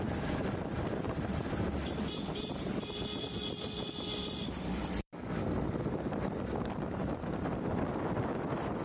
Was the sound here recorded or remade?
remade